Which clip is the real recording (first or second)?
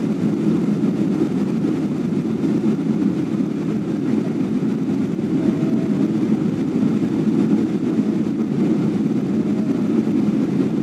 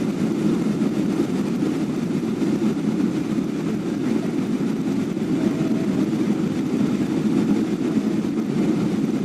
first